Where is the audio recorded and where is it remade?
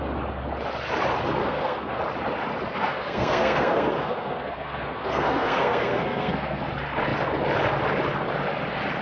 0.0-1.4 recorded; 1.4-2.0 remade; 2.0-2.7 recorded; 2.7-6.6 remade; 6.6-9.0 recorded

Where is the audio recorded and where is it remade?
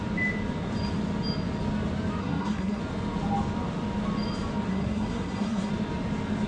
0.0-2.2 recorded; 2.2-2.8 remade; 2.8-4.7 recorded; 4.7-5.7 remade; 5.7-6.5 recorded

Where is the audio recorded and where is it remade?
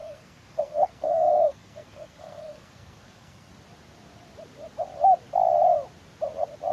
0.0-3.5 remade; 3.5-6.7 recorded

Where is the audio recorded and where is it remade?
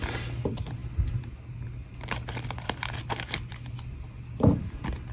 0.0-5.1 recorded